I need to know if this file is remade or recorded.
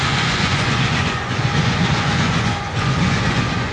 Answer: remade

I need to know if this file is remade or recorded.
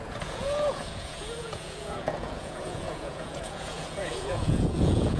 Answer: remade